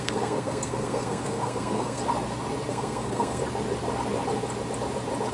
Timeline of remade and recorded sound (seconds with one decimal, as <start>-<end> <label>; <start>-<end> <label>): 0.0-2.0 remade; 2.0-2.7 recorded; 2.7-3.4 remade; 3.4-5.3 recorded